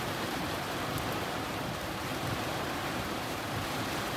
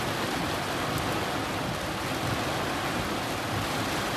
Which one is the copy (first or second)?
first